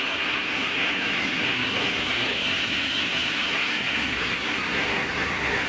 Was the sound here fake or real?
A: fake